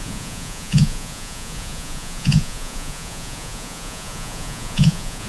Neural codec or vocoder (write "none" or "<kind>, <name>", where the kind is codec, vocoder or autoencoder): vocoder, Vocos